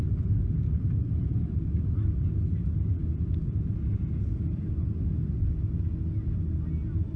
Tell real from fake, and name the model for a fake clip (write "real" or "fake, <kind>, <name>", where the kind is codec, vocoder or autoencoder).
real